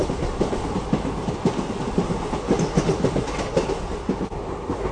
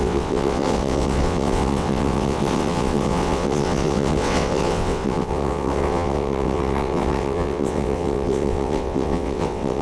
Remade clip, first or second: second